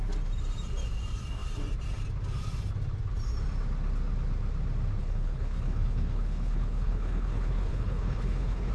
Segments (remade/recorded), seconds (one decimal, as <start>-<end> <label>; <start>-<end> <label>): 0.0-5.0 recorded; 5.0-8.7 remade